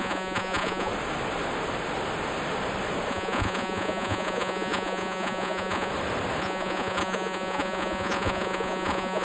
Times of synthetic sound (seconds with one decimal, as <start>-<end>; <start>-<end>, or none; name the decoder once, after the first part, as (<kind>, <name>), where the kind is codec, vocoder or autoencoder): 0.0-0.9 (vocoder, Vocos); 3.1-5.9; 6.4-9.2